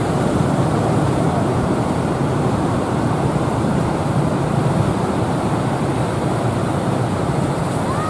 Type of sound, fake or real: fake